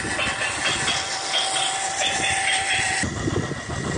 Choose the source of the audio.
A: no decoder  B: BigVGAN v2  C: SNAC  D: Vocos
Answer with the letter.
A